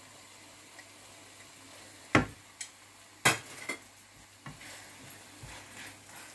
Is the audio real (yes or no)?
yes